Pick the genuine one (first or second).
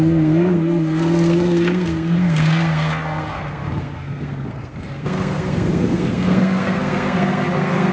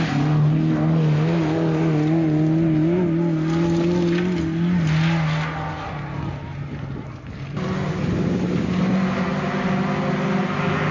second